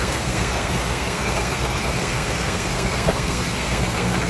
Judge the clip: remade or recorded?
remade